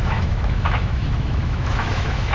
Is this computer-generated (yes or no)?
yes